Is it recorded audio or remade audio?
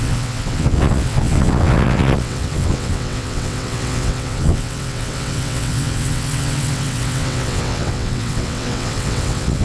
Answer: remade